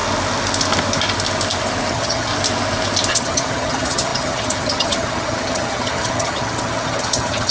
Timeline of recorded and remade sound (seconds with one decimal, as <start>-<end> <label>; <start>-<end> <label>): 0.0-1.9 recorded; 1.9-2.3 remade; 2.3-3.1 recorded; 3.1-7.5 remade